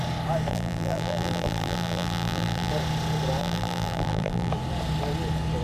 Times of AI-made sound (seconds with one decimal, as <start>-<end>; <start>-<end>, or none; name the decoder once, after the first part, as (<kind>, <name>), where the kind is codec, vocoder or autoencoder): 0.5-2.7 (vocoder, BigVGAN v2); 3.4-4.5